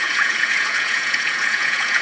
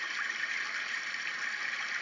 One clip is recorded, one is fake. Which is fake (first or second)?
first